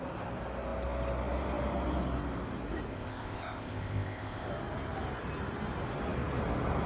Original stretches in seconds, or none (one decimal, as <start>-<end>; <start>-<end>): 0.0-2.9; 4.5-6.9